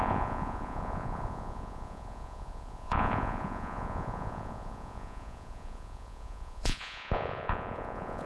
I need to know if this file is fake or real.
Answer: fake